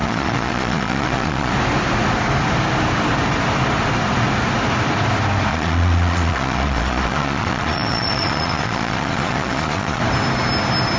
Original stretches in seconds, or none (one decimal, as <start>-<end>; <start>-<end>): 1.5-5.5; 10.0-11.0